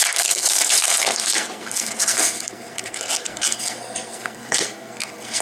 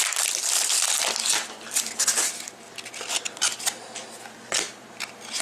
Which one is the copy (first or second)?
first